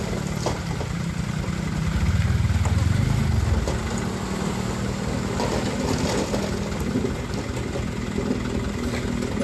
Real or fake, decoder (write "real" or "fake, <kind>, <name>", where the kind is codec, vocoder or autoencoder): real